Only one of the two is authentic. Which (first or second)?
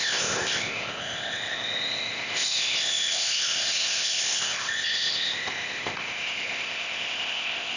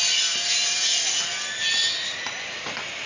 second